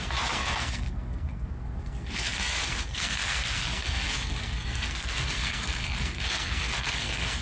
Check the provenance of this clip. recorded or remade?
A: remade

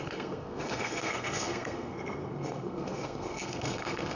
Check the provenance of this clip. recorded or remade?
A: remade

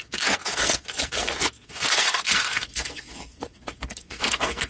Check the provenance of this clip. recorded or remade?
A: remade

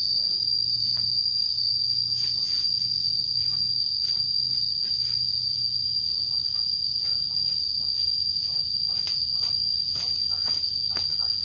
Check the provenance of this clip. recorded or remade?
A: recorded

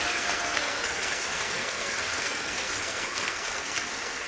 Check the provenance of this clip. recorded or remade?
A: remade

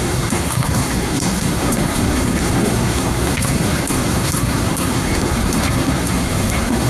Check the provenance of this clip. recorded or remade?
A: remade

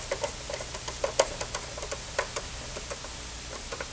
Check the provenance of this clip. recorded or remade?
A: recorded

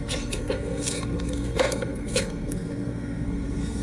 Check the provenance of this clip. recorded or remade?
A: remade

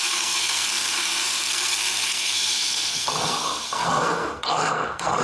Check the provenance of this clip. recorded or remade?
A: remade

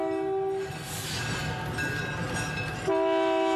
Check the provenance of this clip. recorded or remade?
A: recorded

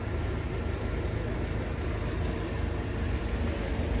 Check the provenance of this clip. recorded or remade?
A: recorded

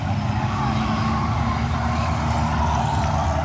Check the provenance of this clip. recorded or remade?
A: recorded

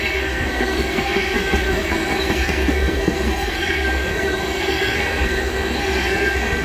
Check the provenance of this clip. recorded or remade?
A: remade